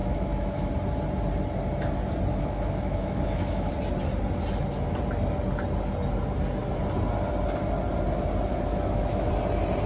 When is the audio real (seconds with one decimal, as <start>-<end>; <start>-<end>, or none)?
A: 0.7-2.3; 3.7-8.5; 9.3-9.9